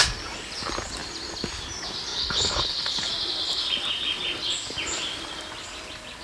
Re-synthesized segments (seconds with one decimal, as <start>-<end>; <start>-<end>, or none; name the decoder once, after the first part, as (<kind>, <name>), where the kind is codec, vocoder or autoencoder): 2.1-3.1 (codec, HILCodec)